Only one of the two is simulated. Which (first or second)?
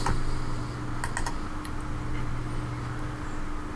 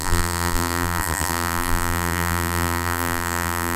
second